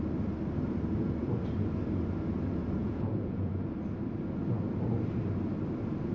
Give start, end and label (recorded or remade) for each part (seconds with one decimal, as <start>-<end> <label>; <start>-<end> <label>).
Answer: 0.0-2.8 recorded; 2.8-3.7 remade; 3.7-6.1 recorded

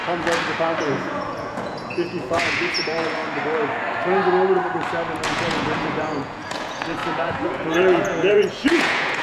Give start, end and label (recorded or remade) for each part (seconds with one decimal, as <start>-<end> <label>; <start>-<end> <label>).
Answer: 0.0-0.8 recorded; 0.8-3.2 remade; 3.2-5.3 recorded; 5.3-9.2 remade

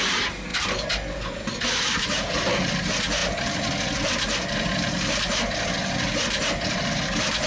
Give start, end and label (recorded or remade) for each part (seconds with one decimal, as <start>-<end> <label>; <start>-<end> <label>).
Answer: 0.0-7.5 recorded